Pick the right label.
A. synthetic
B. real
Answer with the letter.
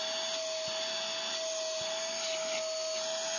B